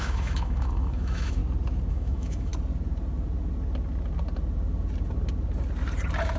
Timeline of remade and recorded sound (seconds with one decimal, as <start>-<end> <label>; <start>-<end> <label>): 0.0-1.4 remade; 1.4-1.9 recorded; 1.9-2.5 remade; 2.5-6.4 recorded